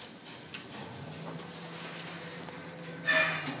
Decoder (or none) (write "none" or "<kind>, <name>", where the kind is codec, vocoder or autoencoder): none